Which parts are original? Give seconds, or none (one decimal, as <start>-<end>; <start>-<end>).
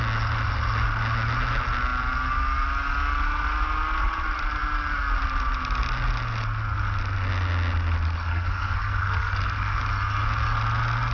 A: 0.0-8.3; 9.8-11.1